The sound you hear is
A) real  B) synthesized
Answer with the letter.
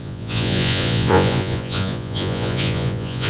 B